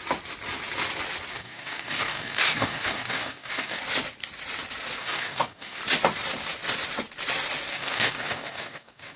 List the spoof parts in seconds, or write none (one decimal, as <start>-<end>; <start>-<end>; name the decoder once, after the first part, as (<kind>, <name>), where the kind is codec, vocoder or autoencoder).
1.3-3.8 (codec, DAC); 5.0-5.8; 7.7-9.2